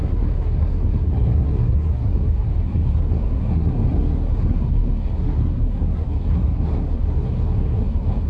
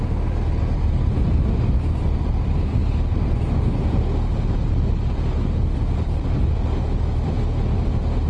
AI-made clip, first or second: first